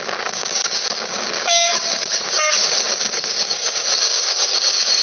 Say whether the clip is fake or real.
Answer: fake